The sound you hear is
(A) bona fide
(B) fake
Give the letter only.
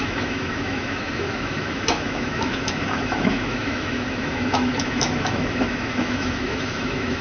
B